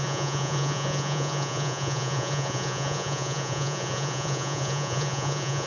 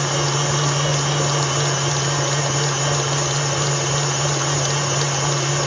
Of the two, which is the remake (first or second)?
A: first